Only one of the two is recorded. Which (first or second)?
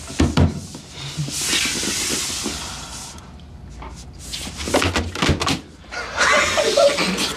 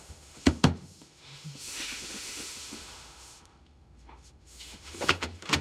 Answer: first